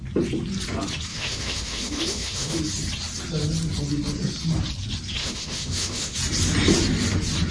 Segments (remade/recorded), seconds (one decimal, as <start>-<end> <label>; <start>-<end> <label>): 0.0-1.1 recorded; 1.1-2.6 remade; 2.6-5.2 recorded; 5.2-6.2 remade; 6.2-7.5 recorded